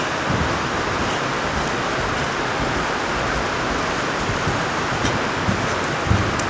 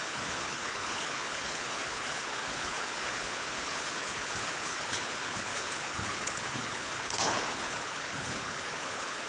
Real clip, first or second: first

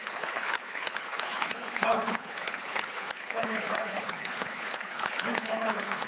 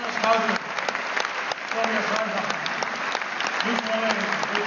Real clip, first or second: second